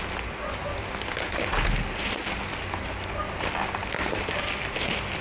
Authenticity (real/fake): real